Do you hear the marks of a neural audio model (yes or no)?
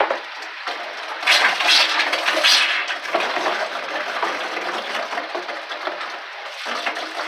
no